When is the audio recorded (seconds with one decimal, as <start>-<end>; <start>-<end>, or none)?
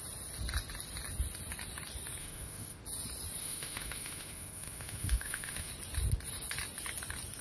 0.0-2.2; 2.8-3.4; 5.7-7.4